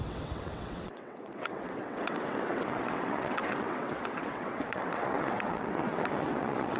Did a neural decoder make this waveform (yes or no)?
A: yes